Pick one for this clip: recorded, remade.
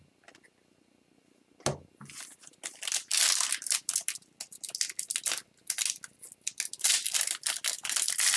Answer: recorded